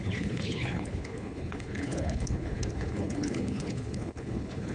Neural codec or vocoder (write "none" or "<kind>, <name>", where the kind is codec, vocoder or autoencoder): codec, HILCodec